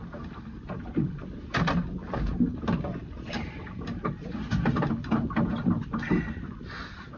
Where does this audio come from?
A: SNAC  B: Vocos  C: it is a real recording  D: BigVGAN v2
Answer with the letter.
C